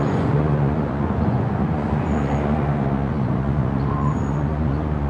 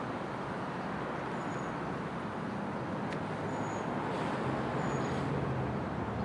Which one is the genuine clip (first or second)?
second